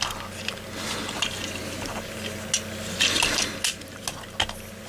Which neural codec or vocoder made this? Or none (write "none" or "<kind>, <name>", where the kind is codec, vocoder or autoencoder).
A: none